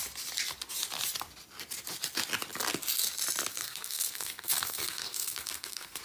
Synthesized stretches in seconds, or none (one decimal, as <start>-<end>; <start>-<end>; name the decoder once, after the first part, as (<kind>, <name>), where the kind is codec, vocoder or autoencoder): 3.5-6.0 (codec, SNAC)